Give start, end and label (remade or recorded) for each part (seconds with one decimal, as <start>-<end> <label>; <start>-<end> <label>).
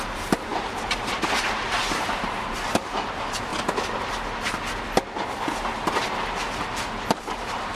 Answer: 0.0-3.5 remade; 3.5-7.2 recorded; 7.2-7.8 remade